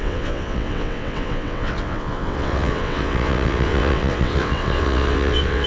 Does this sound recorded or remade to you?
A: remade